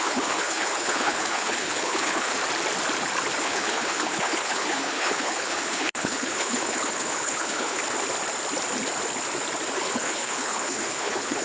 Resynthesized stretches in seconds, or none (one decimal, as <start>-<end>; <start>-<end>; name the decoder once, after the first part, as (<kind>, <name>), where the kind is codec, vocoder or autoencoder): 0.0-2.4 (codec, HILCodec); 3.4-7.8; 9.8-11.4

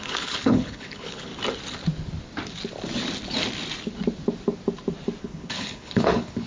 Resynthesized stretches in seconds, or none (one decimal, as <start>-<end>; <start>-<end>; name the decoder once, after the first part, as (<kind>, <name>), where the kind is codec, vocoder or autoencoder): 0.0-1.3 (codec, HILCodec); 5.2-6.5

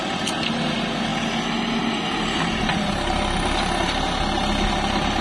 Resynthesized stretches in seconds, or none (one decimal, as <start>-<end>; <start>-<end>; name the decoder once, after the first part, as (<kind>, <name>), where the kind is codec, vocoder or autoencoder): none

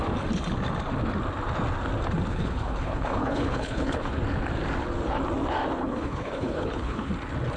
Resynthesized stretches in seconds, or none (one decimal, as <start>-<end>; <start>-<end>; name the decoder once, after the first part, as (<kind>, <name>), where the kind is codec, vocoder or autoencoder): 2.3-4.1 (codec, HILCodec); 5.8-7.1